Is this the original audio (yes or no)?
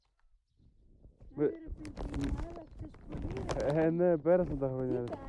yes